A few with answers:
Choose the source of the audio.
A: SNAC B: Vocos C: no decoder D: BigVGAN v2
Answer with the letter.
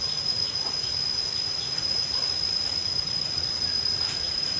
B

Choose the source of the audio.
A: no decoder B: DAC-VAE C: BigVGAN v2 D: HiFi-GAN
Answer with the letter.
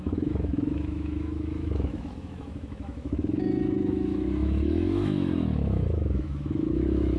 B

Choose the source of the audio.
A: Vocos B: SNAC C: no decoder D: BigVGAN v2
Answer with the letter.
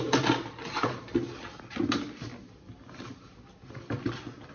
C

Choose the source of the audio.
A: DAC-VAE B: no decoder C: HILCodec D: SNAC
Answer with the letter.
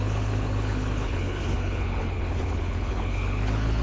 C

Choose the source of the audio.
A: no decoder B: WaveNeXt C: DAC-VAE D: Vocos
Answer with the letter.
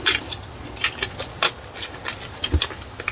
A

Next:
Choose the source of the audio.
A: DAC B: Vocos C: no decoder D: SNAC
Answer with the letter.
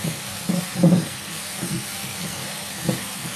D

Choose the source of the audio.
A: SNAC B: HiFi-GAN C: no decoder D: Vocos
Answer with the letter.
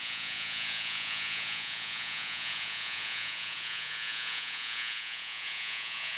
D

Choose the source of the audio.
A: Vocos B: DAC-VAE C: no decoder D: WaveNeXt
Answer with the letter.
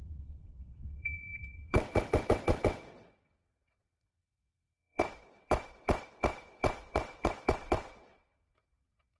D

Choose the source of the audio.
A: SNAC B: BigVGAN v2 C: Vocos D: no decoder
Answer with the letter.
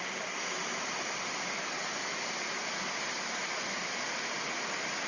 D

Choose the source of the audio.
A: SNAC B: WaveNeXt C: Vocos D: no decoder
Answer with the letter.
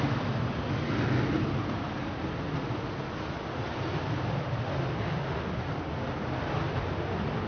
D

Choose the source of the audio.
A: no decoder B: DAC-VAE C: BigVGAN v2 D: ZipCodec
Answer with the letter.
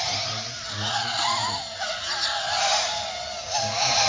A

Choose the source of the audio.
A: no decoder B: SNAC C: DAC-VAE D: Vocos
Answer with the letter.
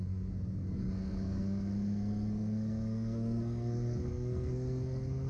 B